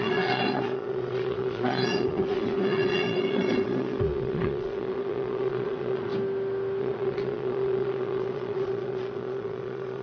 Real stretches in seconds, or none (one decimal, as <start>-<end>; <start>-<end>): 6.1-6.8